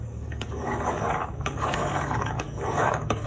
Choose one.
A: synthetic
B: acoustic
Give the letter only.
A